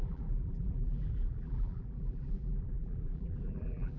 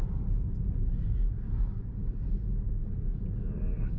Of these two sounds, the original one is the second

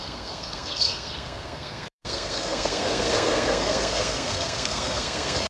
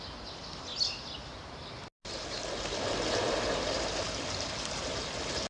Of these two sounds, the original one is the second